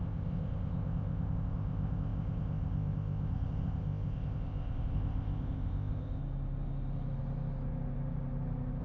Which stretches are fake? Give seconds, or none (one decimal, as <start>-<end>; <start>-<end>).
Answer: 0.0-6.2